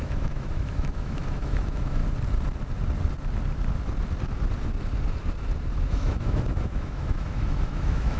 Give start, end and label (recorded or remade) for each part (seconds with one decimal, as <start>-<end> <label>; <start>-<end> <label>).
0.0-2.0 remade; 2.0-5.9 recorded; 5.9-8.2 remade